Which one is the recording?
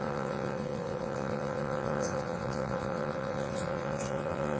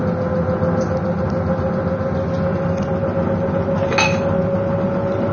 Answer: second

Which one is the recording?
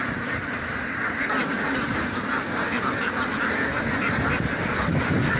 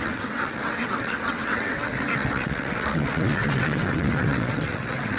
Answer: first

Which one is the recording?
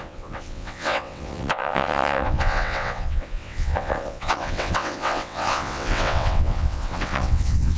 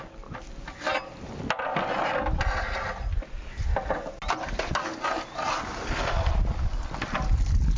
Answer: second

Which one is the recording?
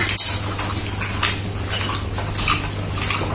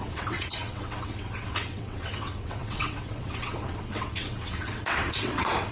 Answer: first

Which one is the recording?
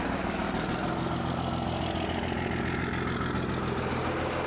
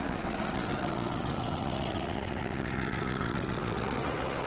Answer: first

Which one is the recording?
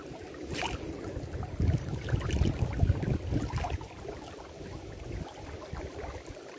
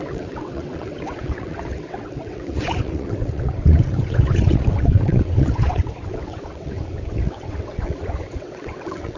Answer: first